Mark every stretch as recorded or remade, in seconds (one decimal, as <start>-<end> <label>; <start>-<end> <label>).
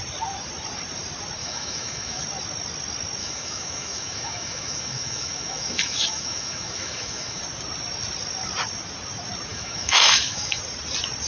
0.0-1.4 recorded; 1.4-2.2 remade; 2.2-3.2 recorded; 3.2-7.4 remade; 7.4-9.5 recorded; 9.5-10.6 remade; 10.6-11.3 recorded